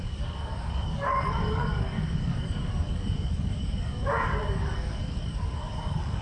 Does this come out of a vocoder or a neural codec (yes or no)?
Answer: yes